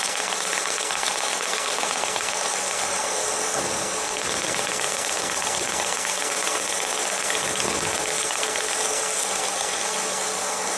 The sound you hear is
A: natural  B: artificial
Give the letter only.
B